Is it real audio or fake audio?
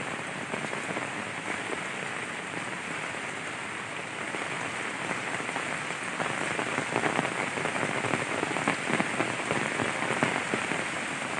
real